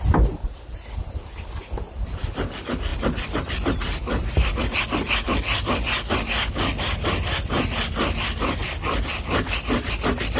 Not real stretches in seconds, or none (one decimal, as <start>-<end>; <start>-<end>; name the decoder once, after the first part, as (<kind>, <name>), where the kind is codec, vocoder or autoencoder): none

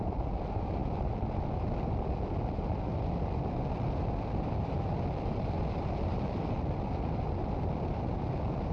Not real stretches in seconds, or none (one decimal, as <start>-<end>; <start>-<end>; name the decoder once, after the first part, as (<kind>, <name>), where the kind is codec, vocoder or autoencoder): none

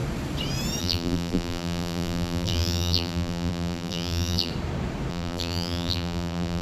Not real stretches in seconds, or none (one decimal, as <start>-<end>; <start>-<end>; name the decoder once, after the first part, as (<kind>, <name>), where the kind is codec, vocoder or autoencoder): 0.8-4.5 (vocoder, BigVGAN v2); 5.1-6.6

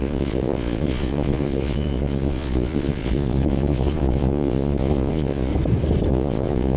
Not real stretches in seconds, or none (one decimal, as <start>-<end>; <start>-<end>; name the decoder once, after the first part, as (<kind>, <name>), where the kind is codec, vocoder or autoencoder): 0.0-5.5 (vocoder, Vocos); 6.1-6.8

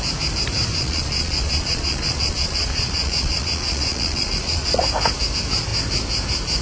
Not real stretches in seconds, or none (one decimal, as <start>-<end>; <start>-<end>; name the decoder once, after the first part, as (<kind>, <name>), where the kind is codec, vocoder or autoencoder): 0.8-4.8 (vocoder, Vocos)